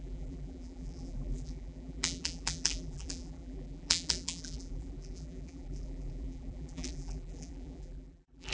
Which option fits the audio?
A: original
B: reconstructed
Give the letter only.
B